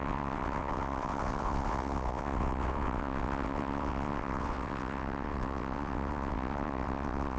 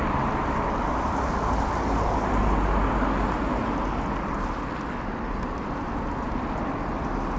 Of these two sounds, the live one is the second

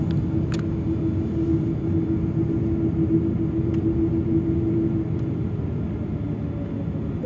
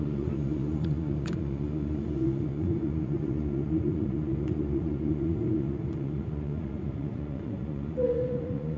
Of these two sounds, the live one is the first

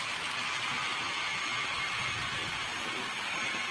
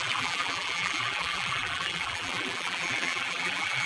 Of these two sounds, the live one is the first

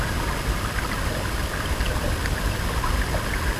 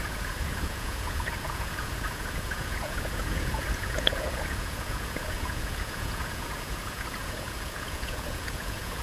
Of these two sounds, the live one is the first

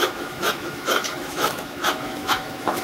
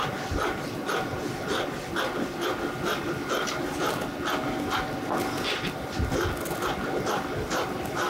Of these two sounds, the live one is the second